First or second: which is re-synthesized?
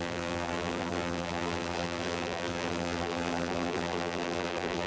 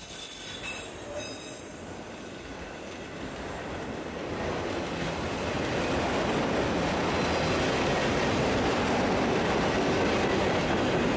first